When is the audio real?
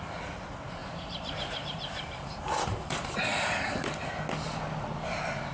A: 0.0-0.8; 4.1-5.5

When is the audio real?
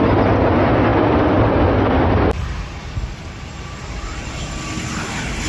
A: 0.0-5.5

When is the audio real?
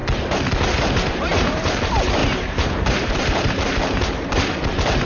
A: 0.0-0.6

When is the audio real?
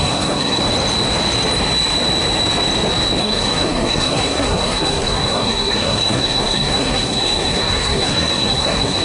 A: 0.6-3.2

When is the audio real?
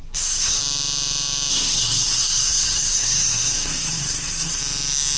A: 0.6-1.5; 4.6-5.2